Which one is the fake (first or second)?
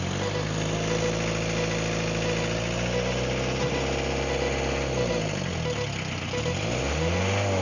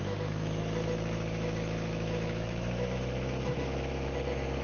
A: second